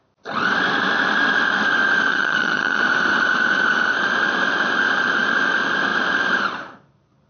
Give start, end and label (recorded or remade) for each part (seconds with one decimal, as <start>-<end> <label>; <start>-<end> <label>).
0.0-2.1 recorded; 2.1-2.8 remade; 2.8-7.3 recorded